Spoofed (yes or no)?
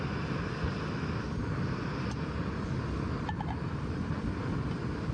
no